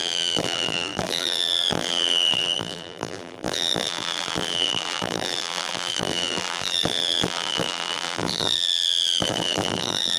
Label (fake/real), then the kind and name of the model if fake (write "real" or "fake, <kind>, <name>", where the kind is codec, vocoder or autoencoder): fake, vocoder, BigVGAN v2